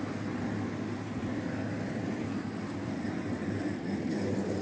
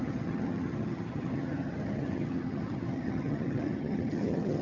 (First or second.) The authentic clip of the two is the first